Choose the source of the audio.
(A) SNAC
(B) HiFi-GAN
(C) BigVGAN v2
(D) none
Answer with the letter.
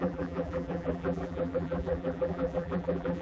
C